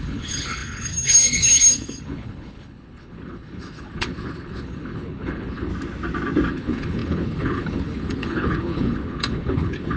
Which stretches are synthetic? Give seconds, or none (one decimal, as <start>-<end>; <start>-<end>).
0.0-5.7; 6.5-10.0